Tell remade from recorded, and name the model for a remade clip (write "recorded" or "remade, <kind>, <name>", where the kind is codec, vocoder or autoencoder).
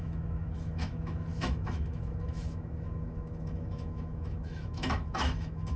remade, autoencoder, DAC-VAE